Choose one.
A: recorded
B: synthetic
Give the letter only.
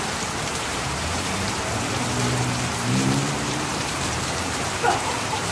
B